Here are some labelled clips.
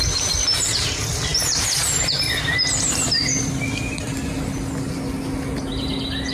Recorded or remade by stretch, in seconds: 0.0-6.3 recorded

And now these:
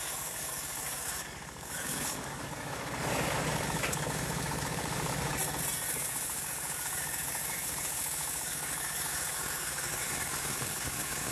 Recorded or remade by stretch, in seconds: 0.0-5.3 remade; 5.3-5.9 recorded; 5.9-11.3 remade

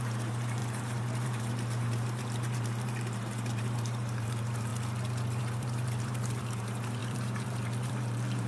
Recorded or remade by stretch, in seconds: 0.0-4.7 remade; 4.7-5.4 recorded; 5.4-8.5 remade

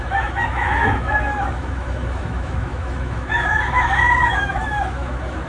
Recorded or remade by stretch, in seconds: 0.0-5.5 remade

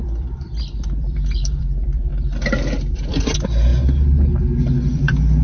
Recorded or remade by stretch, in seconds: 0.0-2.1 remade; 2.1-2.9 recorded; 2.9-3.7 remade; 3.7-4.8 recorded; 4.8-5.4 remade